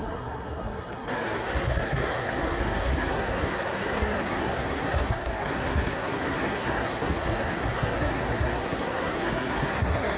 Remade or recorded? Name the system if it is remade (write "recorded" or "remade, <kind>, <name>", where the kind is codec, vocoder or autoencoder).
remade, codec, SNAC